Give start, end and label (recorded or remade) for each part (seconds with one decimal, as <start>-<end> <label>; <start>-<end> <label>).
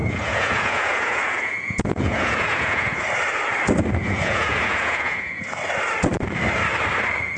0.0-3.0 remade; 3.0-4.0 recorded; 4.0-5.4 remade; 5.4-7.4 recorded